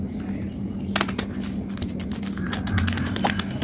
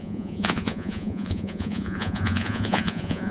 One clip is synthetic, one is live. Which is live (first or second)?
first